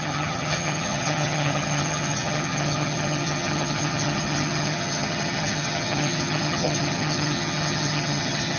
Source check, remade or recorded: remade